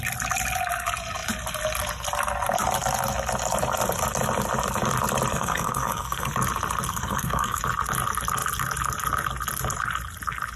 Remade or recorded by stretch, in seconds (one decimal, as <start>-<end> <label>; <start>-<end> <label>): 0.0-5.3 recorded; 5.3-6.3 remade; 6.3-6.9 recorded; 6.9-7.6 remade; 7.6-10.6 recorded